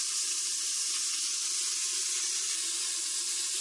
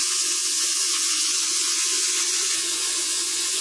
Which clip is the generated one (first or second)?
second